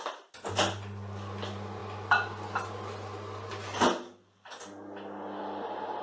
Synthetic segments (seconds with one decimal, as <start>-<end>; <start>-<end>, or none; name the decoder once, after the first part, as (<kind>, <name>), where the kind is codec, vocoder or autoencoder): none